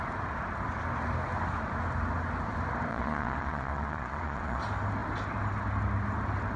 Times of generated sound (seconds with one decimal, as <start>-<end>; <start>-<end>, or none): 2.9-4.6